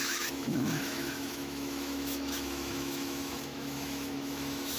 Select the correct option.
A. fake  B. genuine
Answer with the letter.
A